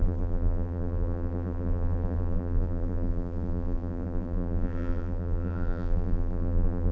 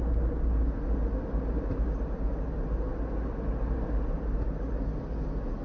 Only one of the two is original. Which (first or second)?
second